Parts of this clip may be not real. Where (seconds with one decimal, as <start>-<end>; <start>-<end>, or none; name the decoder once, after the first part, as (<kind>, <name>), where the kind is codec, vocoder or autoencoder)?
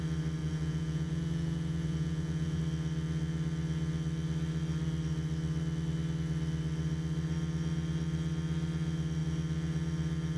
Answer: 0.4-2.6 (vocoder, Vocos)